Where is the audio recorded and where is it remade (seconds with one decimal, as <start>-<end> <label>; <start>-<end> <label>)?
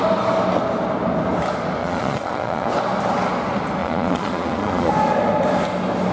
0.0-1.8 recorded; 1.8-2.7 remade; 2.7-3.8 recorded; 3.8-4.9 remade; 4.9-6.1 recorded